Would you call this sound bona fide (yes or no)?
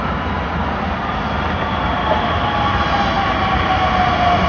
yes